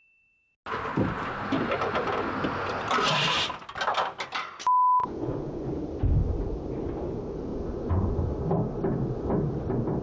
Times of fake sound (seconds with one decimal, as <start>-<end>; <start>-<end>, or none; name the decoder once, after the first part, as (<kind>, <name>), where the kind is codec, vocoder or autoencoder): 5.0-5.7 (vocoder, Vocos); 7.5-8.3